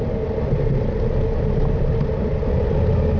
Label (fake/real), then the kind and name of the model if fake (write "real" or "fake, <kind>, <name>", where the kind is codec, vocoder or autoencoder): real